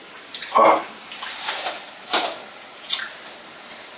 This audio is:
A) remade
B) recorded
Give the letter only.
B